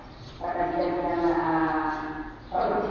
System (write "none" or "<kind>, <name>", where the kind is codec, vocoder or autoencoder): none